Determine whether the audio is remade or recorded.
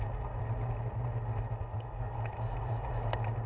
recorded